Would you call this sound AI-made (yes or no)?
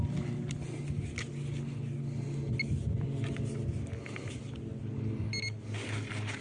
no